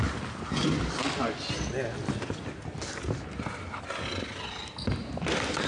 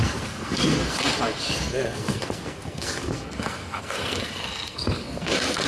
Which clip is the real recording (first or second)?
first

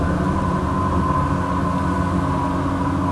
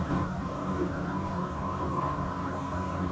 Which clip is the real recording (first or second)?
first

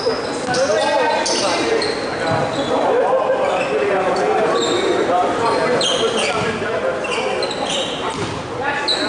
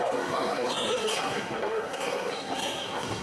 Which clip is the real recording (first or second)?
first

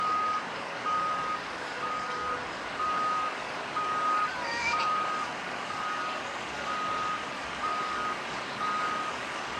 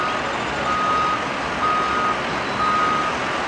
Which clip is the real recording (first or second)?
second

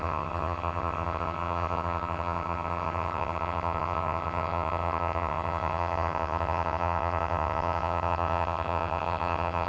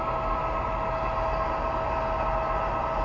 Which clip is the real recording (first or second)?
second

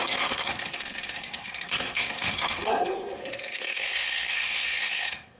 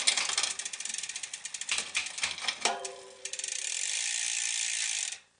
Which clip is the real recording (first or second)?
second